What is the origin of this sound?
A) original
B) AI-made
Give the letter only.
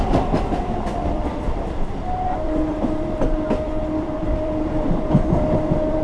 B